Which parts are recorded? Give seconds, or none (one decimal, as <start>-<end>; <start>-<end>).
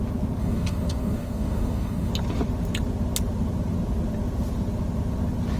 0.0-0.4; 2.1-5.6